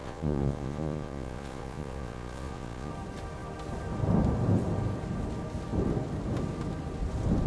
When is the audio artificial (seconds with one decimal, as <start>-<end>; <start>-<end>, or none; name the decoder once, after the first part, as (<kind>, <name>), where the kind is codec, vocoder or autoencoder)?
0.0-2.9 (vocoder, Vocos)